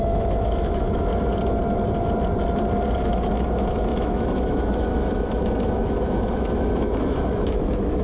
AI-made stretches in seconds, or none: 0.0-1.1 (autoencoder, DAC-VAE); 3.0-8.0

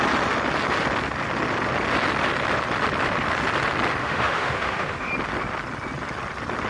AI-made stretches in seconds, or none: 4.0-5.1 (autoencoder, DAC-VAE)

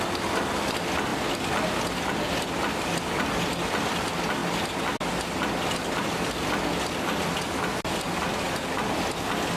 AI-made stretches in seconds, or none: none

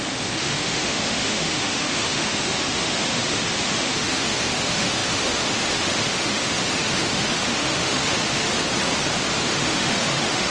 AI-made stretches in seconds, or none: 0.0-3.2 (autoencoder, DAC-VAE); 3.7-8.5; 9.3-10.5

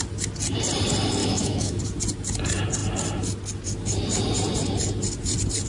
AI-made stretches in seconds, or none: 1.2-1.8 (autoencoder, DAC-VAE)

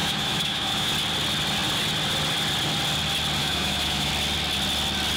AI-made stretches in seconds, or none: 0.0-0.9 (autoencoder, DAC-VAE); 3.4-4.1